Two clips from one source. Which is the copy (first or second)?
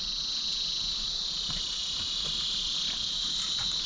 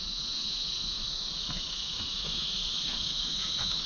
second